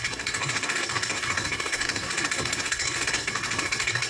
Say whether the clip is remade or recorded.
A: remade